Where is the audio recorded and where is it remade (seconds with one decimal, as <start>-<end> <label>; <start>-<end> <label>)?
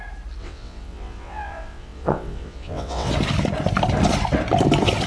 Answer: 0.0-0.4 recorded; 0.4-3.1 remade; 3.1-5.1 recorded